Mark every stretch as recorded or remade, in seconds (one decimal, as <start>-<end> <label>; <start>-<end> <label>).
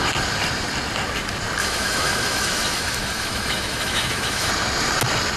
0.0-1.6 recorded; 1.6-4.5 remade; 4.5-5.4 recorded